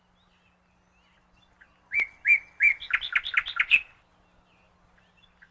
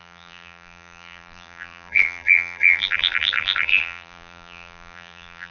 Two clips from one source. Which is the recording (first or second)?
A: first